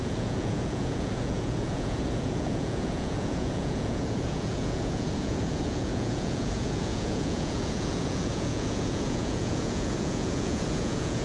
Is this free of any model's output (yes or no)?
no